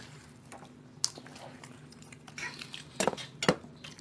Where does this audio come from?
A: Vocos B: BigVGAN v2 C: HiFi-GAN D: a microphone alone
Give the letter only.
D